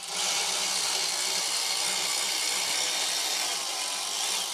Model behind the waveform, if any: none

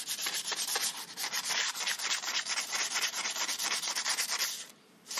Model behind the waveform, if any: vocoder, BigVGAN v2